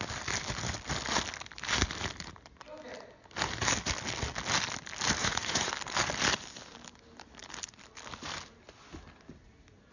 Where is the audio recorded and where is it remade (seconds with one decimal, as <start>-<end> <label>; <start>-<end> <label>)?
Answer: 0.0-5.2 recorded; 5.2-5.7 remade; 5.7-9.9 recorded